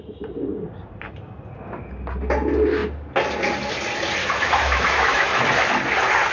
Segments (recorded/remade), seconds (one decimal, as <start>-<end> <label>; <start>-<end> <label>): 0.0-4.2 recorded; 4.2-5.5 remade; 5.5-6.3 recorded